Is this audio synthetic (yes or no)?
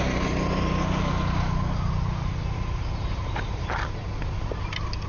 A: no